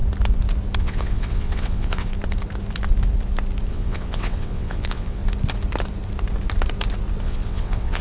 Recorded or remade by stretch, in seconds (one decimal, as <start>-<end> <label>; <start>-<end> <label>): 0.0-0.8 recorded; 0.8-2.1 remade; 2.1-3.7 recorded; 3.7-5.2 remade; 5.2-7.2 recorded; 7.2-8.0 remade